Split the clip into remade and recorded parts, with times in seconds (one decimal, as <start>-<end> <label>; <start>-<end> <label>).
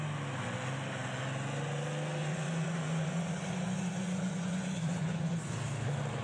0.0-2.2 recorded; 2.2-5.3 remade; 5.3-6.2 recorded